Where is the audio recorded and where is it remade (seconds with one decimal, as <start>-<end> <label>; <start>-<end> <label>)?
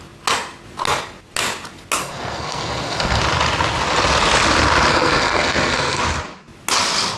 0.0-2.0 recorded; 2.0-3.2 remade; 3.2-4.9 recorded; 4.9-6.0 remade; 6.0-7.2 recorded